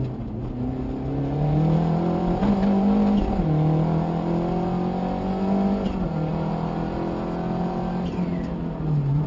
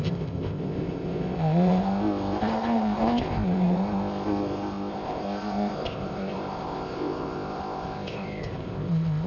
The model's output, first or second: second